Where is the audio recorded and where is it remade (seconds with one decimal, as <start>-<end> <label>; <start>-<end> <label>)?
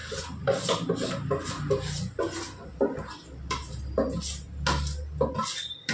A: 0.0-5.9 recorded